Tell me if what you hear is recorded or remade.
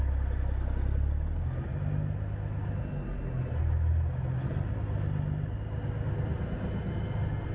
recorded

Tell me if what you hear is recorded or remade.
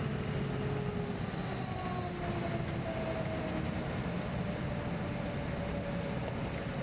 recorded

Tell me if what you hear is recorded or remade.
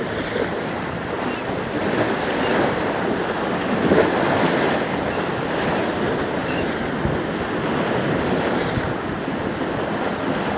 recorded